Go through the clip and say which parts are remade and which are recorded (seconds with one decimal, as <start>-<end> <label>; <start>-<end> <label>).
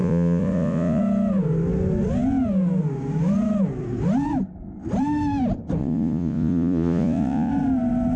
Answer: 0.0-1.0 remade; 1.0-5.8 recorded; 5.8-7.5 remade; 7.5-8.2 recorded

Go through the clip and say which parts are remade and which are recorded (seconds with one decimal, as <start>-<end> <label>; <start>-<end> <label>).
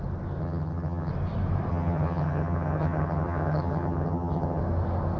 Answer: 0.0-0.4 recorded; 0.4-1.1 remade; 1.1-1.7 recorded; 1.7-4.6 remade; 4.6-5.2 recorded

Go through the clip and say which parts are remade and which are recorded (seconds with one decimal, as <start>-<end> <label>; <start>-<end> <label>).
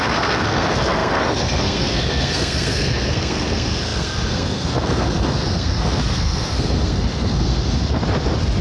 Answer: 0.0-8.0 remade; 8.0-8.6 recorded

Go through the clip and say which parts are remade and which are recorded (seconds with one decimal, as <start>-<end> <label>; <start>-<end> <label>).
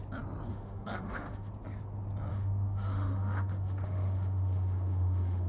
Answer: 0.0-0.5 recorded; 0.5-1.5 remade; 1.5-2.3 recorded; 2.3-5.5 remade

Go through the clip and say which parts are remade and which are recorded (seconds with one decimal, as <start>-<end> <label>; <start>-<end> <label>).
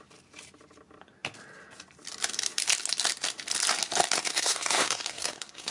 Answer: 0.0-4.2 recorded; 4.2-5.7 remade